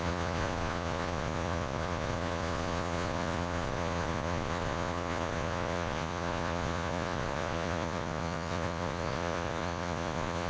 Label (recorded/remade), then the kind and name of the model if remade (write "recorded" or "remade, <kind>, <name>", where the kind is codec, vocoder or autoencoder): remade, vocoder, Vocos